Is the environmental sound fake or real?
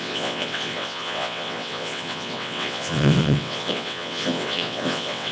fake